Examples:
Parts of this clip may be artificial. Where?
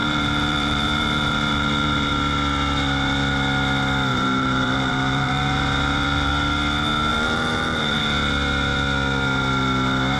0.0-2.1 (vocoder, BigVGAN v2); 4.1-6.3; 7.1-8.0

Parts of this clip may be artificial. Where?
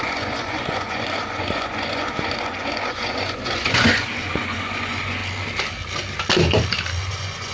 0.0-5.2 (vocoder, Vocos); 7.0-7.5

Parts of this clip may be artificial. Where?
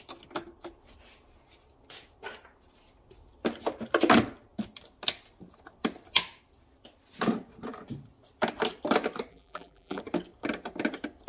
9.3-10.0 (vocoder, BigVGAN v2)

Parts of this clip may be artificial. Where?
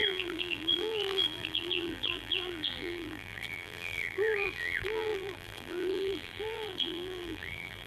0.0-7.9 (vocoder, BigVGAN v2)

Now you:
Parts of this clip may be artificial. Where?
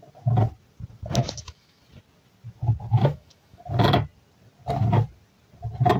1.2-1.8 (autoencoder, DAC-VAE); 2.9-3.6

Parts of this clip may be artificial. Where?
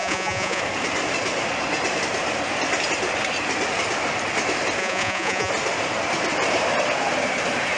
0.0-0.6 (vocoder, Vocos); 4.8-5.5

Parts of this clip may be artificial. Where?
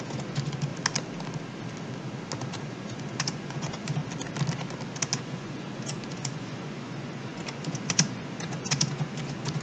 0.0-0.7 (vocoder, Vocos); 2.6-4.0; 5.2-9.6